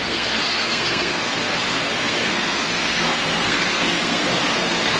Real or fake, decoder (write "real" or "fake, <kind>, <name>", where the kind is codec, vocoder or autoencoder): fake, codec, SNAC